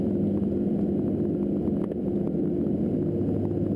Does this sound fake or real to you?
real